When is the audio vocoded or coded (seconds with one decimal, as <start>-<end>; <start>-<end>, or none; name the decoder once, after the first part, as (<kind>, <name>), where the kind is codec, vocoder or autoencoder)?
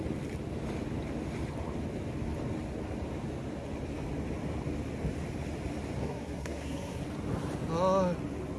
6.0-7.0 (codec, SNAC)